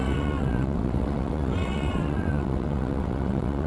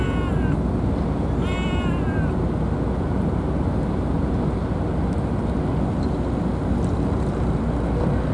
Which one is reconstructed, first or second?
first